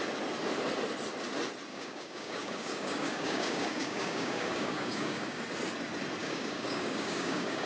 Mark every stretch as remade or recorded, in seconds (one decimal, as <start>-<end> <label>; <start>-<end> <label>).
0.0-1.7 recorded; 1.7-5.4 remade; 5.4-6.2 recorded; 6.2-7.7 remade